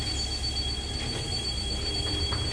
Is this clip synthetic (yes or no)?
no